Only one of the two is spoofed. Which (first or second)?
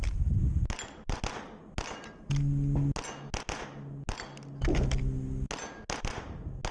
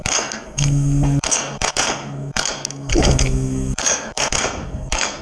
second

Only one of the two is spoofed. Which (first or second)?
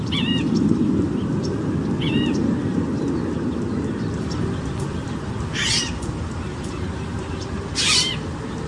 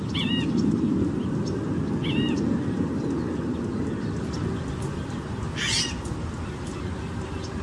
first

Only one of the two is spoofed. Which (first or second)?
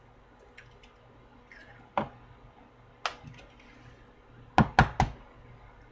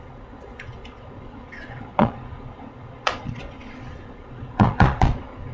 second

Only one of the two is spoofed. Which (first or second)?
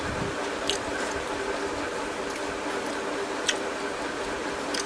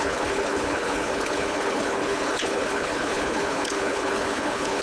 second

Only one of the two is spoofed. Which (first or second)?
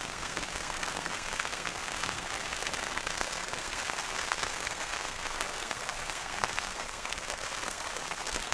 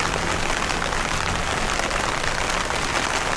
first